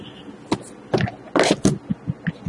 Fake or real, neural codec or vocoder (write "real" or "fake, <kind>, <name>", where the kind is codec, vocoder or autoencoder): real